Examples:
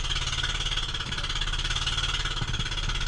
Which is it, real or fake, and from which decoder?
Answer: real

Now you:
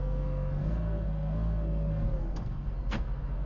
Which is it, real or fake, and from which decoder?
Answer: fake, codec, SNAC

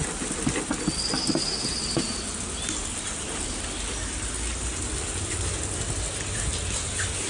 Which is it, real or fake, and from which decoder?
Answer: real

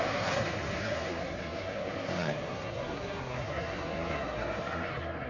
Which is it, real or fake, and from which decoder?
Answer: fake, codec, SNAC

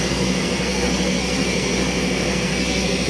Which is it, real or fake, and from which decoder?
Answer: fake, codec, SNAC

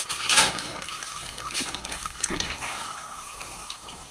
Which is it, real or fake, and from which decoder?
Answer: fake, codec, SNAC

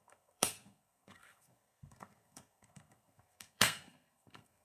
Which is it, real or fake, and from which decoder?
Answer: fake, codec, SNAC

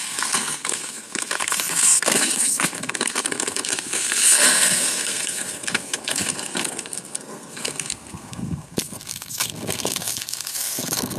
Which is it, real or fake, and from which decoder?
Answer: fake, codec, SNAC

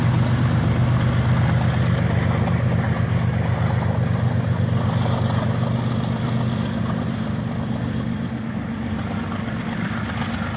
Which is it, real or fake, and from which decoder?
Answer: real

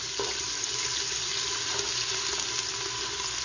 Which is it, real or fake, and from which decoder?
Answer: real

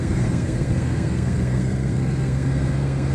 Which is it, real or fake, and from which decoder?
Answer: fake, codec, SNAC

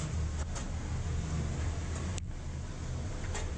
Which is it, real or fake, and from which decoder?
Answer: real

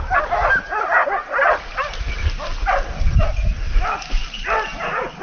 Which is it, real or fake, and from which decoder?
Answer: real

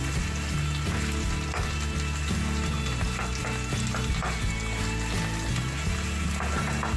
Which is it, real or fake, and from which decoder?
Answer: real